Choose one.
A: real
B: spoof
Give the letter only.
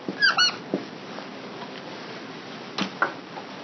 A